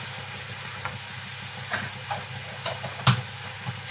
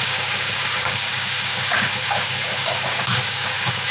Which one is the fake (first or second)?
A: second